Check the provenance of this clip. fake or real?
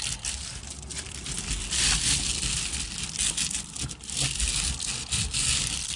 real